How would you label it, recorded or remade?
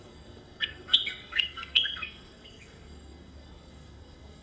remade